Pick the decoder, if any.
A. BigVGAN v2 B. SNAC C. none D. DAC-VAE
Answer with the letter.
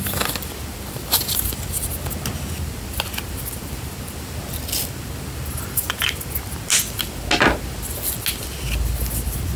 C